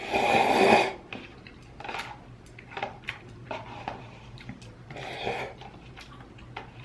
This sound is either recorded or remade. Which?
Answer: recorded